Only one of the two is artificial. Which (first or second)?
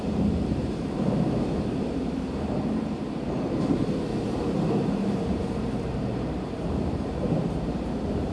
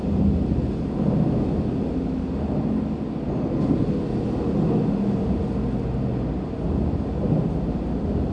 first